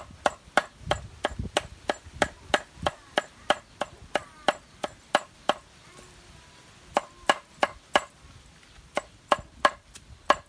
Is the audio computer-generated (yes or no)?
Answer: no